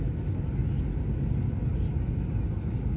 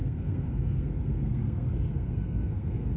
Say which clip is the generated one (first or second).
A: second